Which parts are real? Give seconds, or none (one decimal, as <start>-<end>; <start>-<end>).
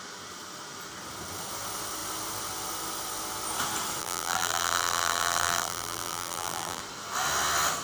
0.0-4.0; 6.8-7.8